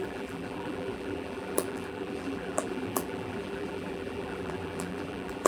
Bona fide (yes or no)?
no